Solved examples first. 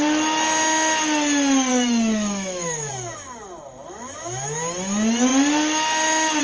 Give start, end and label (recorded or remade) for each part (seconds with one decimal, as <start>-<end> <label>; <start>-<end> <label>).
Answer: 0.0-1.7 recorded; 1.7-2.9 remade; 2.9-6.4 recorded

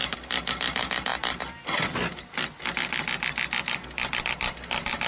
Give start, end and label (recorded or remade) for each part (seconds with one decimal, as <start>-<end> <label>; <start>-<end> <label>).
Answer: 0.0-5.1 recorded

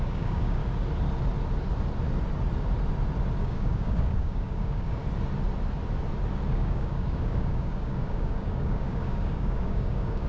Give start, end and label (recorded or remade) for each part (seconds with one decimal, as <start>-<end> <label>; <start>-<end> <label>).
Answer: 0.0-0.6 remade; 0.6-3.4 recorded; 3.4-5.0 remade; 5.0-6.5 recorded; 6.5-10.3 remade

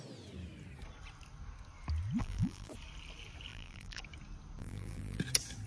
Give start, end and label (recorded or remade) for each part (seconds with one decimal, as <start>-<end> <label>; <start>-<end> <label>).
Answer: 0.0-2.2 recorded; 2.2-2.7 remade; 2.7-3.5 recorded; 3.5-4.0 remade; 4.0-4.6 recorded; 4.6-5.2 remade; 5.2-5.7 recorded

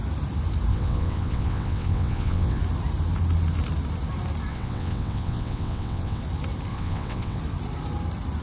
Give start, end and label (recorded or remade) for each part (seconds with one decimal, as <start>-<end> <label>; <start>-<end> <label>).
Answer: 0.0-0.7 recorded; 0.7-2.6 remade; 2.6-4.5 recorded; 4.5-6.2 remade; 6.2-6.7 recorded; 6.7-7.4 remade; 7.4-8.4 recorded